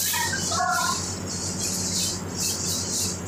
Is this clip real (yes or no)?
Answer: yes